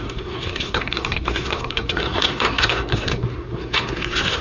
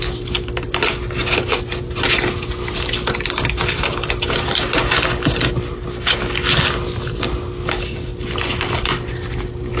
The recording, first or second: second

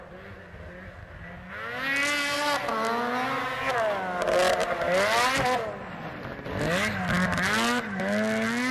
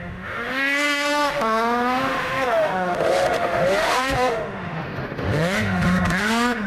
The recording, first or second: first